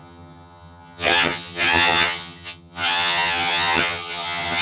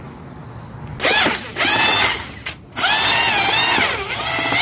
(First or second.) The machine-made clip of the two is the first